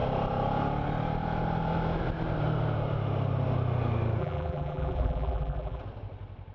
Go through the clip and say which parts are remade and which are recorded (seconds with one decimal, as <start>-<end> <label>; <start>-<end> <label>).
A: 0.0-4.2 recorded; 4.2-5.8 remade; 5.8-6.5 recorded